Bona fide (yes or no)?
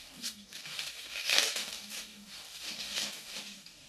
no